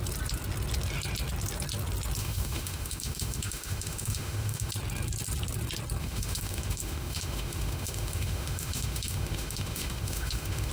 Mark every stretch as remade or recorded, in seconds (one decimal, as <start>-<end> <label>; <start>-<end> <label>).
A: 0.0-2.2 recorded; 2.2-4.7 remade; 4.7-6.0 recorded; 6.0-10.7 remade